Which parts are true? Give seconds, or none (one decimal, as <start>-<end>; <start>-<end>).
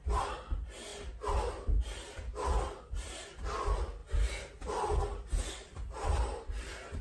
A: 0.0-7.0